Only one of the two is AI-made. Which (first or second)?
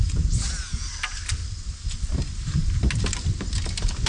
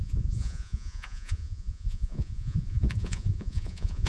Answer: second